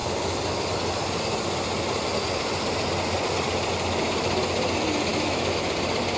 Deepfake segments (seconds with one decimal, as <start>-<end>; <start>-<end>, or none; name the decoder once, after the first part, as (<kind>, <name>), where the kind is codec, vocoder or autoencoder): 5.1-5.7 (autoencoder, DAC-VAE)